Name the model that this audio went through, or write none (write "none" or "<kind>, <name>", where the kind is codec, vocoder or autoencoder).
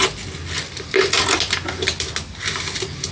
none